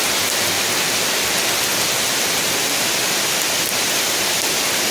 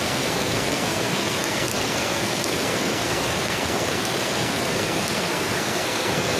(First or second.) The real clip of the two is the first